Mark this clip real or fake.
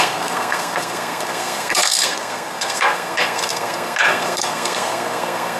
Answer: fake